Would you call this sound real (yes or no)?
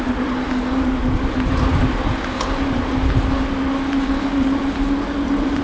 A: yes